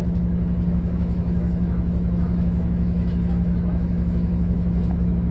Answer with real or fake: fake